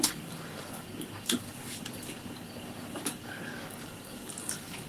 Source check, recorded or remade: remade